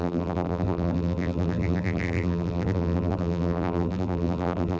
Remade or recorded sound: remade